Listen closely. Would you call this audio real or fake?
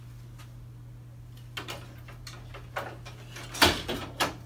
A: real